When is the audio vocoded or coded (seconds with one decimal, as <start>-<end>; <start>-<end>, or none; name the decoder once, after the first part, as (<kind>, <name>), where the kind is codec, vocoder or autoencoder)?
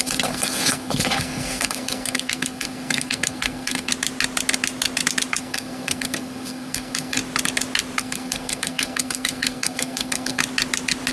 0.0-3.9 (codec, SNAC); 5.4-7.2; 8.0-10.4